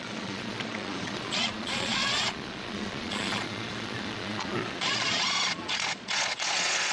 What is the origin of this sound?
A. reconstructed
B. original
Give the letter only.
A